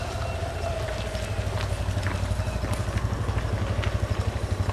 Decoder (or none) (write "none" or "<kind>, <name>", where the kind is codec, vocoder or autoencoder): none